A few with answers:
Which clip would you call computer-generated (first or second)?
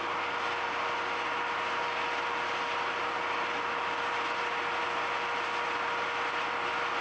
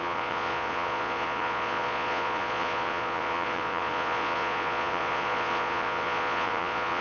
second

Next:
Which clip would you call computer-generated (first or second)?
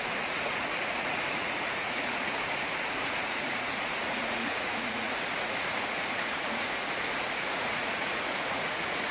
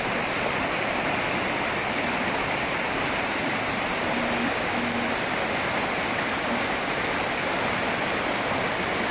first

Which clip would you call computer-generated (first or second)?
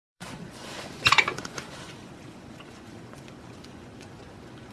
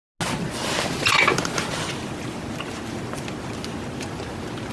first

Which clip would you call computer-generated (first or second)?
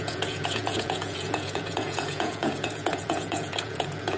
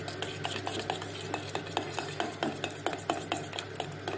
first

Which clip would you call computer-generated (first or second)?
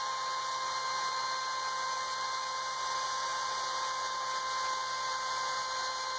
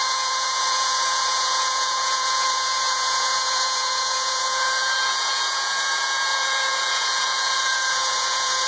second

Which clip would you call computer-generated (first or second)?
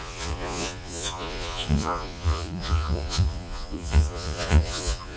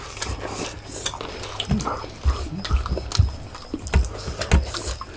first